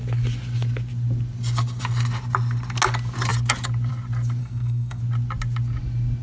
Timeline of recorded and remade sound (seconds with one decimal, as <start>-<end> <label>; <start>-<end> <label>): 0.0-4.4 recorded; 4.4-5.0 remade; 5.0-6.2 recorded